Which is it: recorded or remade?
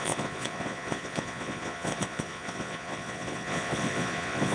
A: remade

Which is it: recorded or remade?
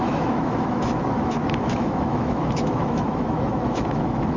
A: remade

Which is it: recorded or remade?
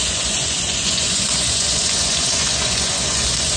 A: remade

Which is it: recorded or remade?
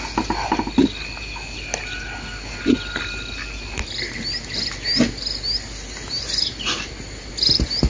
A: recorded